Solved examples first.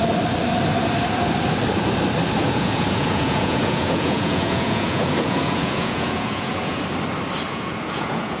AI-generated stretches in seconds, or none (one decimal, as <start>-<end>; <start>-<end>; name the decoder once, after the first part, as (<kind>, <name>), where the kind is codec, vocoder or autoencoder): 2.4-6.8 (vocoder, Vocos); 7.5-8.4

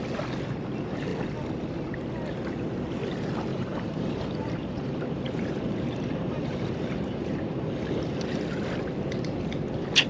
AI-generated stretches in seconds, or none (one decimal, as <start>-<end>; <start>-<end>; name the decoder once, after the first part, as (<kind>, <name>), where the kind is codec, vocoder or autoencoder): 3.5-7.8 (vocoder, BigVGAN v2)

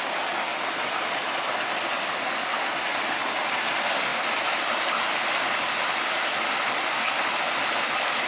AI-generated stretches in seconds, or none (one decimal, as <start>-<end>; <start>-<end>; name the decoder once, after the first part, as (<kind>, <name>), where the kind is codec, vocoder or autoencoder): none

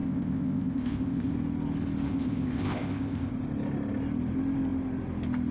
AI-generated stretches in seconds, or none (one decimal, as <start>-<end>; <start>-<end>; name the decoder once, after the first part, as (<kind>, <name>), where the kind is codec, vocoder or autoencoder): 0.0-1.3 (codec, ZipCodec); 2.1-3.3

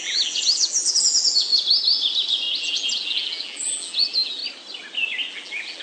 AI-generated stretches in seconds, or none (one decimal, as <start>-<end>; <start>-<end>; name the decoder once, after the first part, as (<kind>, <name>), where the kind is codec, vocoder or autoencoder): 0.0-1.5 (vocoder, BigVGAN v2); 2.6-4.4; 5.3-5.8